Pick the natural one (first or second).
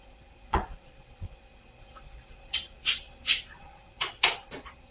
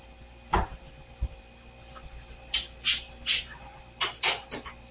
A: second